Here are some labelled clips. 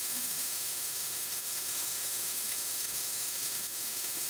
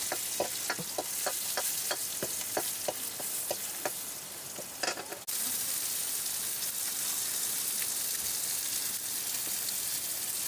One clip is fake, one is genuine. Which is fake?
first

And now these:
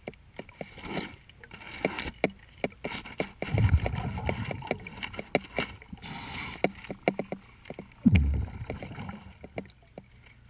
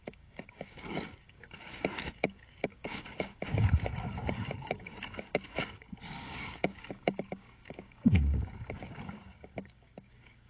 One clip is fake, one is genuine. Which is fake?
second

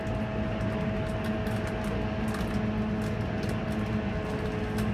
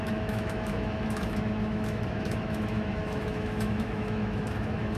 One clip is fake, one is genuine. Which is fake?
second